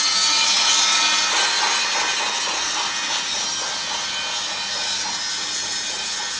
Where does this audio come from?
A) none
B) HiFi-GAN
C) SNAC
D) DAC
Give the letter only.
A